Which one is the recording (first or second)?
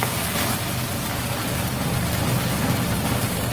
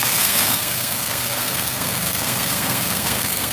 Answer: first